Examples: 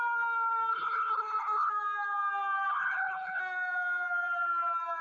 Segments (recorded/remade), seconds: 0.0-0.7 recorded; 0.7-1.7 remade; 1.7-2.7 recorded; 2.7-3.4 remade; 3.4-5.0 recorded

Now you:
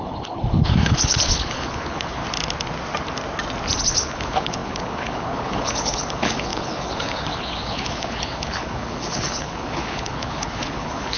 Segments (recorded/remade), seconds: 0.0-2.2 remade; 2.2-3.8 recorded; 3.8-11.2 remade

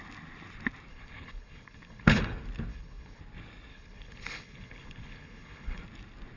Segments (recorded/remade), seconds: 0.0-0.9 recorded; 0.9-2.2 remade; 2.2-2.7 recorded; 2.7-3.2 remade; 3.2-3.7 recorded; 3.7-5.8 remade; 5.8-6.4 recorded

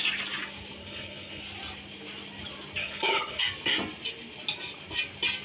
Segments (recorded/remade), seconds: 0.0-0.8 recorded; 0.8-1.4 remade; 1.4-2.8 recorded; 2.8-3.4 remade; 3.4-5.4 recorded

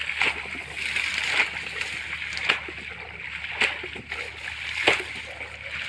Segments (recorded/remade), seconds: 0.0-5.9 recorded

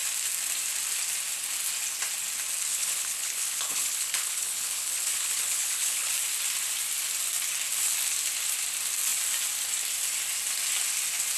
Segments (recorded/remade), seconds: 0.0-2.7 recorded; 2.7-6.1 remade; 6.1-11.4 recorded

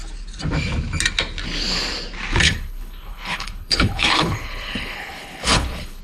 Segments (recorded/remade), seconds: 0.0-2.4 recorded; 2.4-6.0 remade